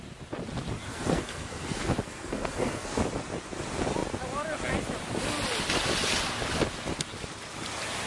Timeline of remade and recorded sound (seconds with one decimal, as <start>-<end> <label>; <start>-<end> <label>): 0.0-0.9 recorded; 0.9-3.0 remade; 3.0-8.1 recorded